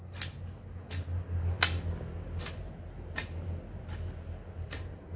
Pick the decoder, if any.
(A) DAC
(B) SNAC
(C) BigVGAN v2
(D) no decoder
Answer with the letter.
D